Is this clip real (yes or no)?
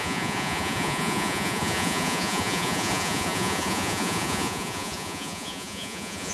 no